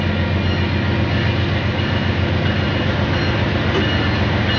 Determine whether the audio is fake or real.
real